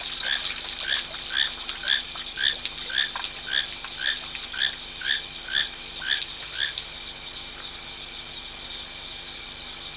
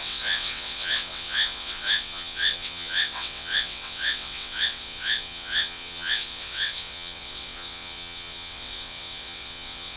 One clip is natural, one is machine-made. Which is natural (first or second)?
first